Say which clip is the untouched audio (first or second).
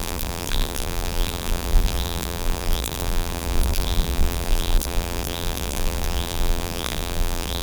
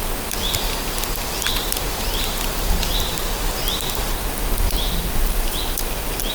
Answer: second